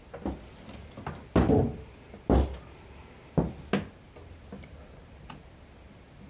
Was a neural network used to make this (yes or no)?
no